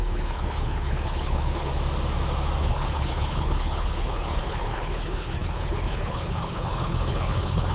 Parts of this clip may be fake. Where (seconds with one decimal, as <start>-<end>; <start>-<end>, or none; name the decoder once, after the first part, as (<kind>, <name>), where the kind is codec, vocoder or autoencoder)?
0.0-1.7 (codec, HILCodec); 2.6-7.7